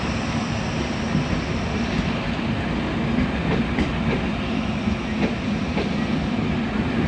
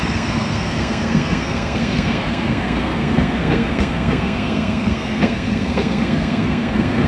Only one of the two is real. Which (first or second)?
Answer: first